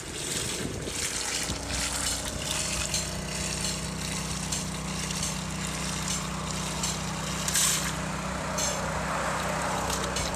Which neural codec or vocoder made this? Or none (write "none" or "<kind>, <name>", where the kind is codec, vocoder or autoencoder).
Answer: none